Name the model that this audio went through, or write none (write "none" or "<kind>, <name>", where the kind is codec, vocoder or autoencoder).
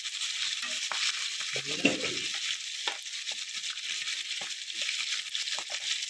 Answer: none